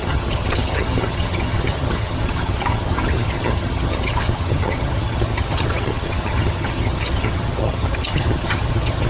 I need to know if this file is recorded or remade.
remade